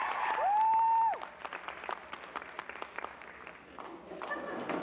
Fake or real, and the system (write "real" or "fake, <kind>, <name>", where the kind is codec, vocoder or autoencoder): real